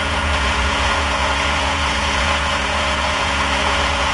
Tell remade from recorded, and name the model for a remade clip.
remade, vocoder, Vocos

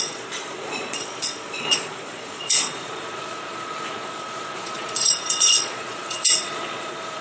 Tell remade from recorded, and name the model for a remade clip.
remade, vocoder, Vocos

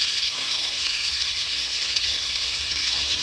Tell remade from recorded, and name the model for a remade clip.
remade, codec, SNAC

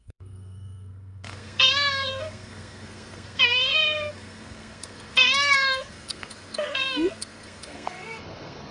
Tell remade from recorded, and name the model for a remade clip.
remade, codec, SNAC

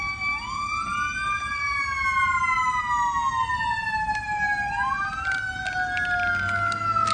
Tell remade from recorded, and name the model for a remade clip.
recorded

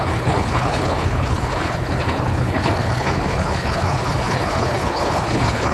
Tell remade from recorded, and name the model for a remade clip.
remade, codec, HILCodec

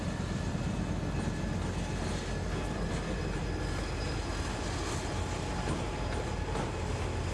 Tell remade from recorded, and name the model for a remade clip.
recorded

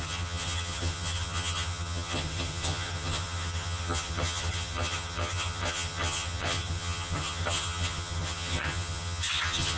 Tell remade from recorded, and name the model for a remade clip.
remade, vocoder, HiFi-GAN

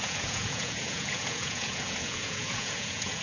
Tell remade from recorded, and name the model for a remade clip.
remade, vocoder, Vocos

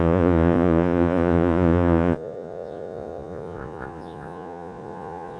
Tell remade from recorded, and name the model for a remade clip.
remade, vocoder, Vocos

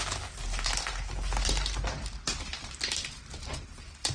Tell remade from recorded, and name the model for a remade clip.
recorded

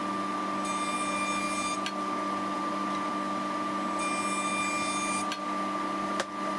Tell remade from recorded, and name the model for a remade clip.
recorded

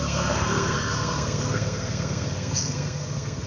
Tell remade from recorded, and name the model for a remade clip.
remade, codec, SNAC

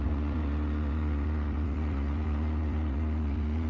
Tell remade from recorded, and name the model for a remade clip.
remade, vocoder, Vocos